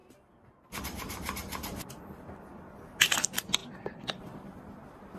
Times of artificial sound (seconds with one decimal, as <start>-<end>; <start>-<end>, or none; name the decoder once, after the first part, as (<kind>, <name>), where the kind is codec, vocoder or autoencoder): 0.0-2.4 (vocoder, BigVGAN v2); 3.6-4.8